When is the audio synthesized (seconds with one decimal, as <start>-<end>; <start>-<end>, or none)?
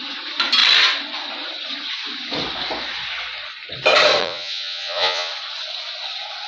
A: 4.2-5.3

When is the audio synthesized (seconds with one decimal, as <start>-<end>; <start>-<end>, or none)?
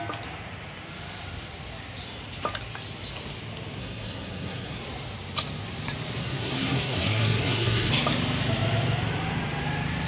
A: 3.8-4.8; 6.2-7.9